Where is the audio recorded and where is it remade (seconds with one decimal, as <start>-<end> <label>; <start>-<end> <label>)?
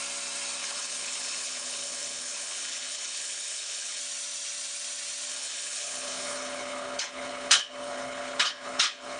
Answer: 0.0-0.6 recorded; 0.6-4.0 remade; 4.0-5.3 recorded; 5.3-9.2 remade